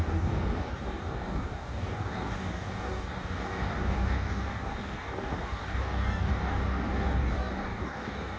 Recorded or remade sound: remade